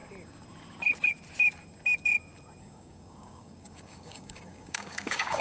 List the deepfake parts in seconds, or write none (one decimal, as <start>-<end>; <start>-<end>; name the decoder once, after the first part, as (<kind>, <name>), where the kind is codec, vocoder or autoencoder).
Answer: 2.6-5.4 (codec, DAC)